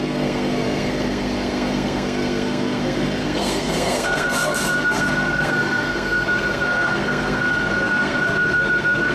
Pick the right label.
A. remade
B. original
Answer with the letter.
A